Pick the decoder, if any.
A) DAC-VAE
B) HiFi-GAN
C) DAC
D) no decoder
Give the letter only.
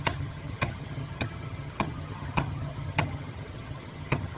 B